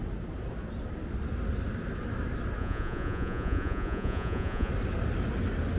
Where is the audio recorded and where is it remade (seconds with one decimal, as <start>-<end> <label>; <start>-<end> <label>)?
0.0-2.6 recorded; 2.6-4.7 remade; 4.7-5.8 recorded